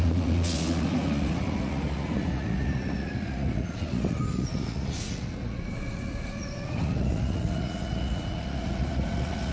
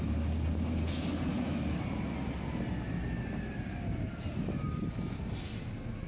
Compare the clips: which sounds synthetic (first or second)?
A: first